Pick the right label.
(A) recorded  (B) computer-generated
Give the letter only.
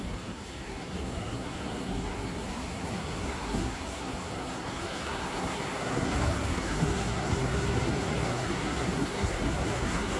B